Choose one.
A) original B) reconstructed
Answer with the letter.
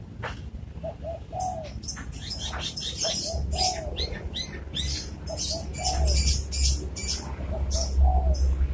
A